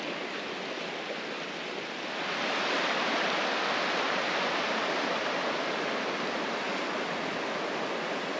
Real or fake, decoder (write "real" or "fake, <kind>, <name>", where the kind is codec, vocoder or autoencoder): real